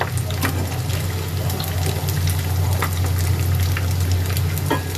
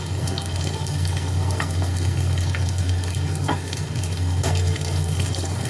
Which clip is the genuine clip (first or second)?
first